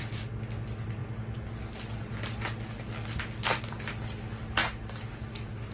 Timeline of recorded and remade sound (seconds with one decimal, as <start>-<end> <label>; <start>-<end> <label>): 0.0-5.7 recorded